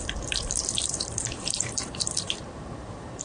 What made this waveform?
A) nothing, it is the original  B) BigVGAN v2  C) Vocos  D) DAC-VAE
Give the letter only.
B